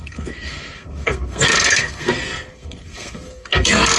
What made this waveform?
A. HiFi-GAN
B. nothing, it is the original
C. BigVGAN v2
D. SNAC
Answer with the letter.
D